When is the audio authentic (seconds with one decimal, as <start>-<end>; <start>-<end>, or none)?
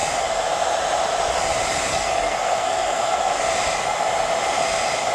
0.0-1.9; 3.3-5.1